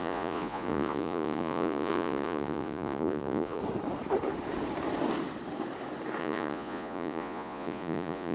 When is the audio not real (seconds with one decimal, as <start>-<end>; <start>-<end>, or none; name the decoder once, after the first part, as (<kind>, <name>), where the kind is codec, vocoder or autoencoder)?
0.0-3.6 (vocoder, Vocos); 6.2-8.3